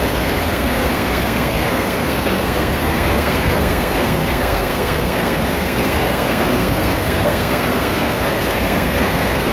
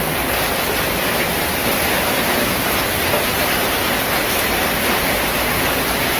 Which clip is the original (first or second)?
second